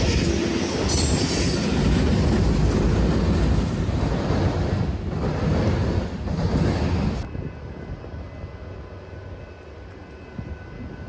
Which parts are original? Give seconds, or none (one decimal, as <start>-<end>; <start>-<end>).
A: 0.0-11.1